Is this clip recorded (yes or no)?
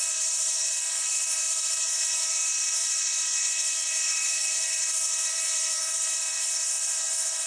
no